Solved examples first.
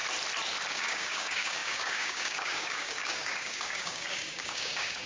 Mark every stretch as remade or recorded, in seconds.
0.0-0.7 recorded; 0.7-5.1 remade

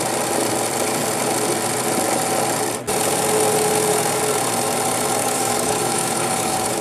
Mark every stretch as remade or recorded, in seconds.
0.0-5.2 recorded; 5.2-6.8 remade

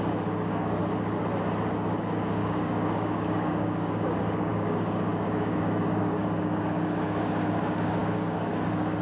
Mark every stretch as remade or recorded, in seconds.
0.0-0.8 remade; 0.8-2.0 recorded; 2.0-9.0 remade

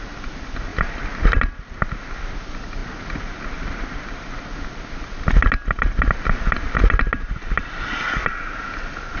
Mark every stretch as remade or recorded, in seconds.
0.0-9.2 recorded

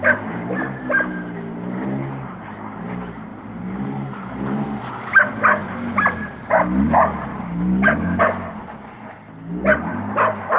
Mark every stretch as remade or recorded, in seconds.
0.0-7.3 recorded; 7.3-8.2 remade; 8.2-10.6 recorded